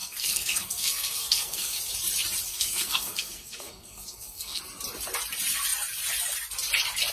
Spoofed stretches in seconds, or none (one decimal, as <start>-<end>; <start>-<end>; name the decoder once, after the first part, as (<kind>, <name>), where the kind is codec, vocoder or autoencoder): 0.0-1.8 (codec, SNAC); 2.5-4.6